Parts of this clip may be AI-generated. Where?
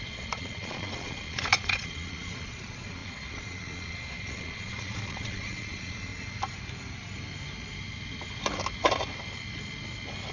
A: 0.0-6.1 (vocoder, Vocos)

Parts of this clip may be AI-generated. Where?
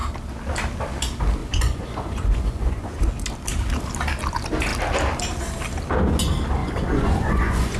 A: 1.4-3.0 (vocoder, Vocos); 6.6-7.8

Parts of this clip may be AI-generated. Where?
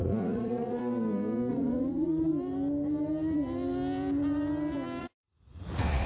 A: 0.0-0.8 (vocoder, Vocos); 1.5-2.3; 5.0-6.1